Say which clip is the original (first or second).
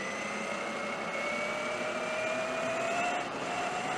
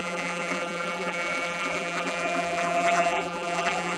first